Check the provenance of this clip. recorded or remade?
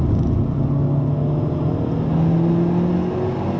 recorded